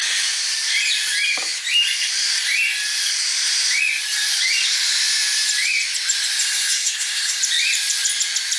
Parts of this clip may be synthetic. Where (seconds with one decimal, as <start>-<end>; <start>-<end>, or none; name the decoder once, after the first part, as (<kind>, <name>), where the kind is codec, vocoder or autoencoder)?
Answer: 6.4-7.4 (codec, SNAC)